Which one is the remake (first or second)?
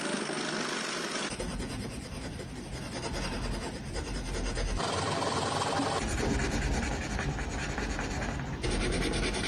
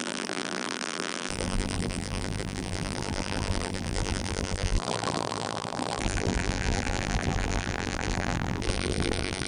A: second